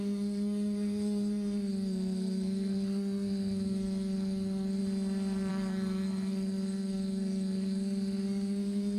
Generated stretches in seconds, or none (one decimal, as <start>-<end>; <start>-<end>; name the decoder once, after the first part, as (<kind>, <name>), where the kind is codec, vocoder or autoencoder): 0.0-4.8 (codec, SNAC); 5.5-9.0